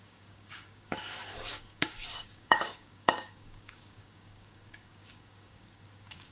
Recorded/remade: remade